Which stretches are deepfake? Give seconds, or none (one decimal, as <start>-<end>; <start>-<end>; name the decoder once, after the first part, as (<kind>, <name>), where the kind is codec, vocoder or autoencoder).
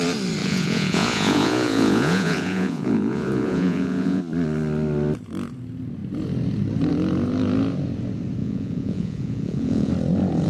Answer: 0.4-4.2 (vocoder, Vocos); 8.4-9.9